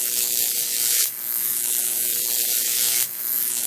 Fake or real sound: fake